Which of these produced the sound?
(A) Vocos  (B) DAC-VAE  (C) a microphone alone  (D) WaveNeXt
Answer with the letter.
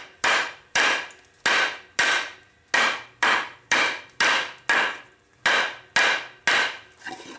C